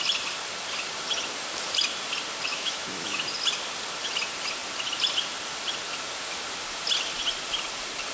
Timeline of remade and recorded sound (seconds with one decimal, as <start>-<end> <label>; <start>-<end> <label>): 0.0-2.5 recorded; 2.5-3.2 remade; 3.2-8.1 recorded